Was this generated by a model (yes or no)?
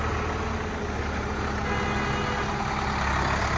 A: no